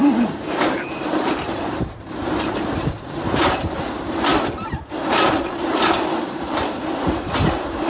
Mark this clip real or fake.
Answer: fake